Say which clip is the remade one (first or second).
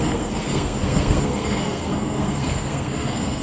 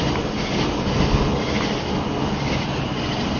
first